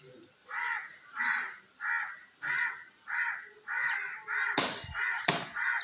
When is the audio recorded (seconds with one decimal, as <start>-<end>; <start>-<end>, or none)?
0.0-0.4; 1.2-3.8